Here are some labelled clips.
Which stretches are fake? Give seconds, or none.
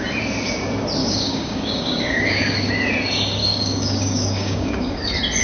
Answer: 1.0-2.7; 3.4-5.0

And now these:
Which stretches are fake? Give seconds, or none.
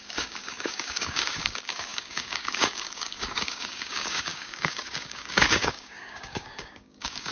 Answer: 0.0-7.3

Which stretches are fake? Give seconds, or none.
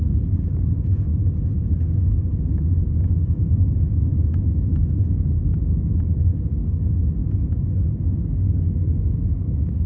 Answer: 0.0-1.1; 1.7-7.2; 8.2-9.9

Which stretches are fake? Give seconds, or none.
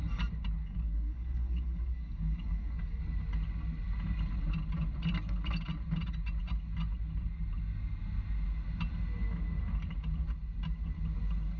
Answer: 0.6-3.0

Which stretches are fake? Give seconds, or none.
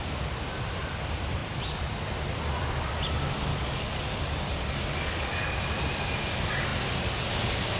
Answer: 3.5-5.7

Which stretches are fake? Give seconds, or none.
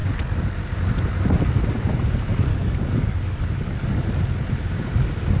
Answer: 0.0-0.6; 2.5-4.0